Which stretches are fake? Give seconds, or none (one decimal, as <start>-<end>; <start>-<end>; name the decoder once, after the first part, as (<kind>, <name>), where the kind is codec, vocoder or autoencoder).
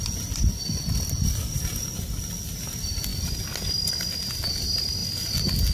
none